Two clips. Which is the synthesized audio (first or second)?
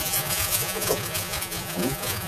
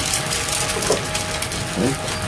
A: first